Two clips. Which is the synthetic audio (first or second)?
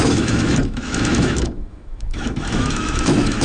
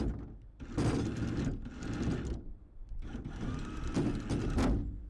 first